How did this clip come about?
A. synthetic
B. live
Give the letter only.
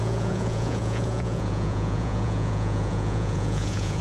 A